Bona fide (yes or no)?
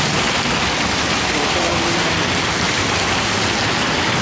yes